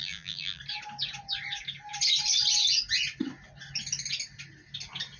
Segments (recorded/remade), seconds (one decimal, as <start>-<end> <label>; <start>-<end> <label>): 0.0-0.6 remade; 0.6-5.2 recorded